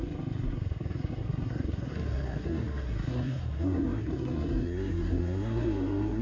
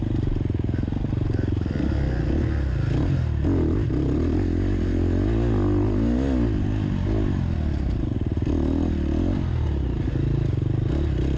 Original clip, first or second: second